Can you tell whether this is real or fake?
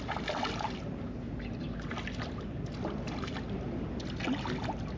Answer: real